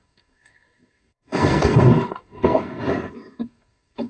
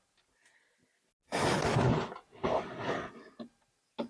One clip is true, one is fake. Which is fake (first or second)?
first